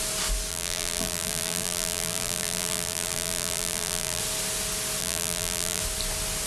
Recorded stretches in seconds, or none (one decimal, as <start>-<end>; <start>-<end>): 0.0-0.5; 4.2-5.0; 5.8-6.5